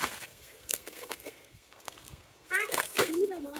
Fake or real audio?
fake